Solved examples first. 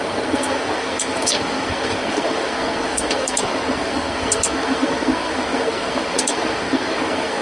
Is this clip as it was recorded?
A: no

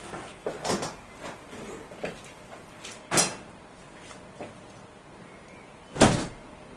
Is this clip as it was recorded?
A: yes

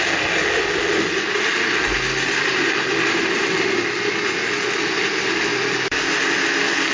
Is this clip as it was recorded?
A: yes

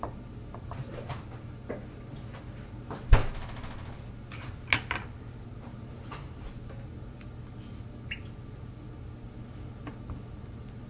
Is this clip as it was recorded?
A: yes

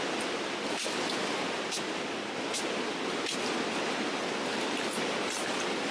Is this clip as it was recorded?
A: yes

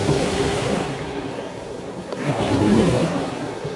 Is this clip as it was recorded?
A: no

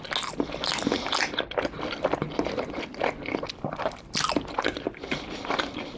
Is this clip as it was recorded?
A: yes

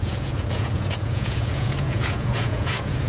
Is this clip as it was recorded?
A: no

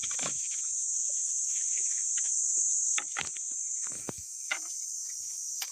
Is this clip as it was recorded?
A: no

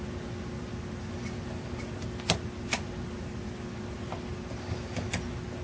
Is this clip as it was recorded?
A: yes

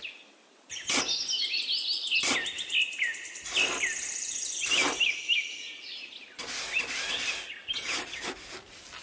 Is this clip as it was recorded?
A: yes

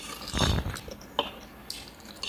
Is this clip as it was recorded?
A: yes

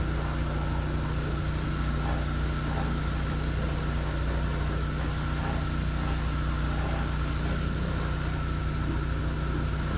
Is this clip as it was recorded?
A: yes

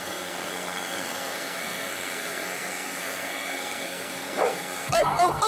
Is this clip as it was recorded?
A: no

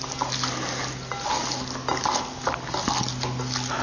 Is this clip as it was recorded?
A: yes